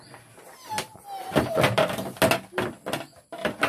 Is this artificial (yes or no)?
no